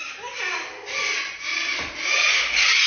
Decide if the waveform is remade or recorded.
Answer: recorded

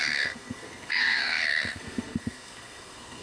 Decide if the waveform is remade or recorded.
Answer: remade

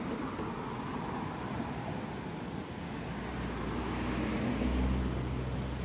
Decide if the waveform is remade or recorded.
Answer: recorded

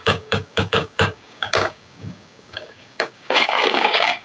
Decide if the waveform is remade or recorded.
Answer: remade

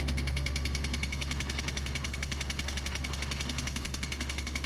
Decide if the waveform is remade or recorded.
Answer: remade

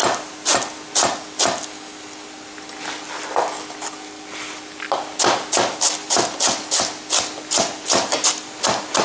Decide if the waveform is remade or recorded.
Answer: recorded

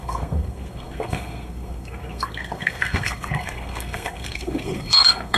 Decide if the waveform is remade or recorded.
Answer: remade